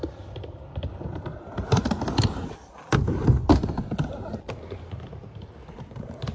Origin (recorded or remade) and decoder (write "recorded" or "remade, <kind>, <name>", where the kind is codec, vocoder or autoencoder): recorded